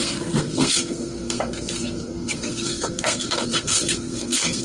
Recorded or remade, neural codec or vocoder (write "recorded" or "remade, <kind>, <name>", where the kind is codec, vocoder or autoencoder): remade, codec, SNAC